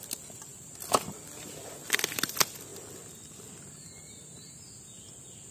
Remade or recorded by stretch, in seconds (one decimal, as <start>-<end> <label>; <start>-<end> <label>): 0.0-5.5 recorded